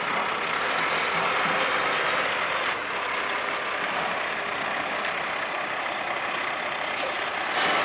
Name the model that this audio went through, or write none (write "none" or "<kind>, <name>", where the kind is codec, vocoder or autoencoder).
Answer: none